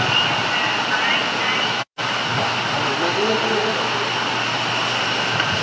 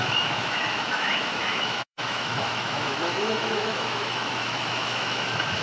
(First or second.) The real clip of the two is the first